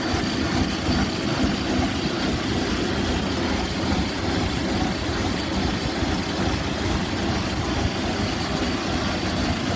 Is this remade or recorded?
recorded